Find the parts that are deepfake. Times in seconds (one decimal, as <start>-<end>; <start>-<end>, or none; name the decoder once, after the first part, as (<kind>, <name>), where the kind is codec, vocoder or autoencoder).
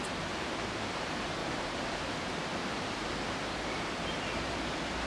1.4-4.5 (vocoder, BigVGAN v2)